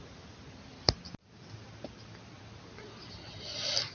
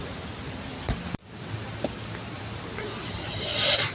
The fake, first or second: second